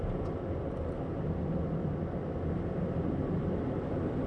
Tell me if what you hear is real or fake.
real